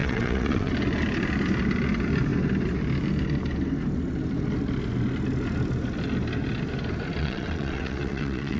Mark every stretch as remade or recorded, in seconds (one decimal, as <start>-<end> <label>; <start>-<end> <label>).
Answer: 0.0-0.7 remade; 0.7-7.2 recorded; 7.2-8.6 remade